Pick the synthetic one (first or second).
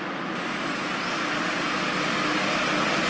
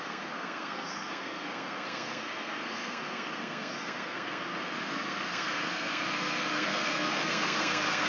second